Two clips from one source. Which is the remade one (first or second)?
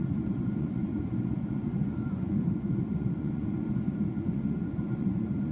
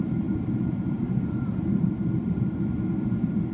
first